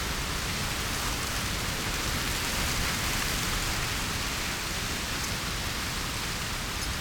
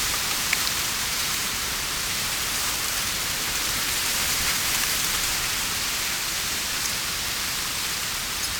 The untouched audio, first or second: first